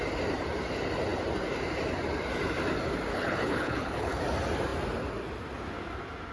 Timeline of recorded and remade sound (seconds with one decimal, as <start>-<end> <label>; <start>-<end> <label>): 0.0-3.1 recorded; 3.1-4.2 remade; 4.2-6.3 recorded